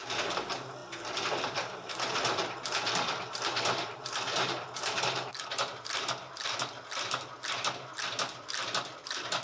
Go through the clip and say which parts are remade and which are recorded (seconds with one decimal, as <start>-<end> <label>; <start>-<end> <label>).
0.0-0.8 recorded; 0.8-5.0 remade; 5.0-9.4 recorded